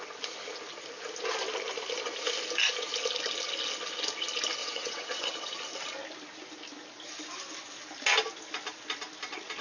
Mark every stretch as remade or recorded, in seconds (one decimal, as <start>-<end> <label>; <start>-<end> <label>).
0.0-4.6 recorded; 4.6-5.3 remade; 5.3-9.6 recorded